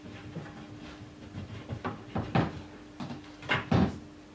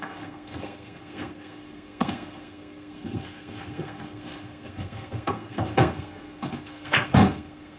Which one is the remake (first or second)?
second